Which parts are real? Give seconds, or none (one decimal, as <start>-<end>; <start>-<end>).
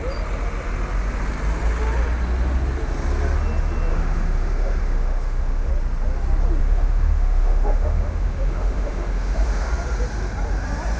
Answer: 0.0-3.9; 5.7-6.6; 9.7-11.0